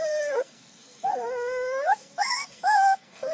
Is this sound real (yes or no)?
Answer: no